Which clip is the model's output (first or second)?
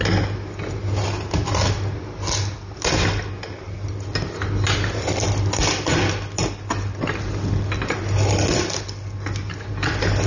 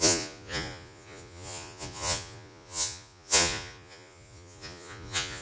second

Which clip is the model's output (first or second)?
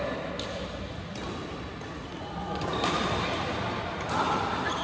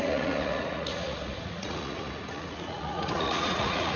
second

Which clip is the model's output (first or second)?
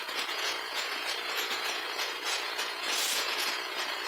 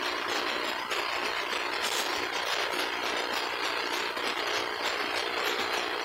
first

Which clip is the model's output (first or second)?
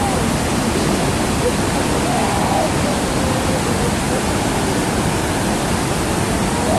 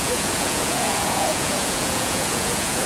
second